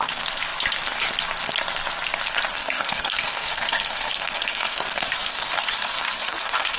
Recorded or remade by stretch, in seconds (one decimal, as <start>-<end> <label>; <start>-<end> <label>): 0.0-2.5 recorded; 2.5-6.8 remade